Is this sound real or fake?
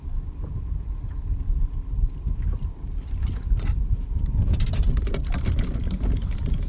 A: real